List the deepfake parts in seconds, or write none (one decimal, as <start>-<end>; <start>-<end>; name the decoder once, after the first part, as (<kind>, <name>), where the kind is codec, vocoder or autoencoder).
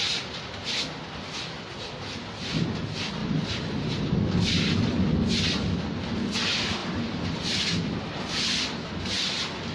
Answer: 3.2-4.1 (vocoder, BigVGAN v2)